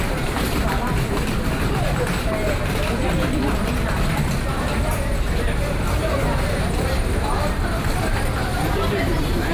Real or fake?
fake